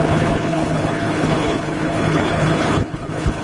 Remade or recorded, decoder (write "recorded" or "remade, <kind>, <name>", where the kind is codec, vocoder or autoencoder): remade, codec, HILCodec